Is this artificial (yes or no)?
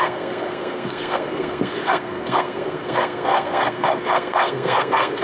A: yes